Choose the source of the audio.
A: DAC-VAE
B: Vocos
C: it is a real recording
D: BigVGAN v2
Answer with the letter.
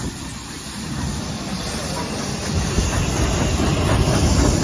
C